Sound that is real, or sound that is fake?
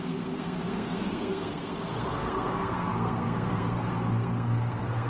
fake